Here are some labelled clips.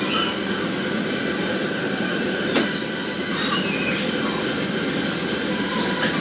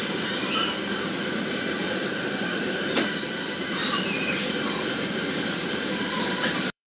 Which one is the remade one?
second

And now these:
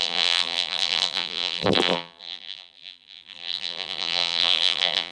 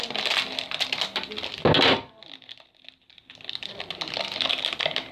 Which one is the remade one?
first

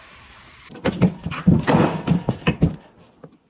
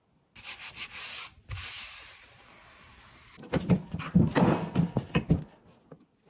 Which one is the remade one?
first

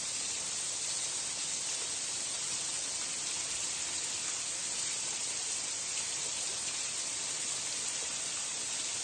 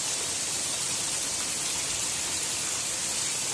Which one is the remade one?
second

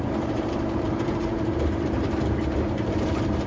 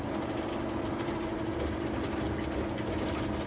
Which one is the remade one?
first